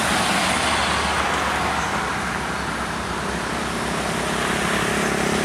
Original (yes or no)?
yes